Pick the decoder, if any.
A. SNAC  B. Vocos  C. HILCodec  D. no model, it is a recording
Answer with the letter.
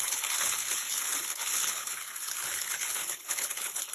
C